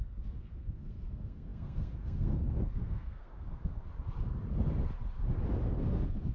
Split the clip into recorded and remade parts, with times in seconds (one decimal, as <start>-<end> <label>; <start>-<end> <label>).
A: 0.0-3.9 remade; 3.9-5.8 recorded; 5.8-6.3 remade